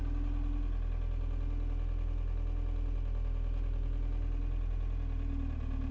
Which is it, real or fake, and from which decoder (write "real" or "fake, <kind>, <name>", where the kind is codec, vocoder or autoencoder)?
real